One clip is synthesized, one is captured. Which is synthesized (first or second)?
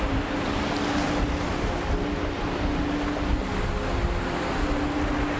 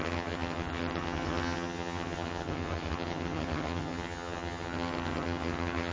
second